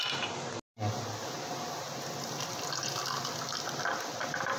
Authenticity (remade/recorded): recorded